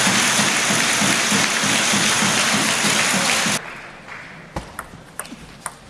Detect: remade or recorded recorded